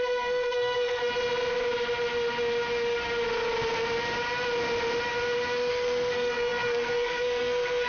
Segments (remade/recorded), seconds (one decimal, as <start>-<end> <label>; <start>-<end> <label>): 0.0-1.0 remade; 1.0-5.7 recorded; 5.7-7.9 remade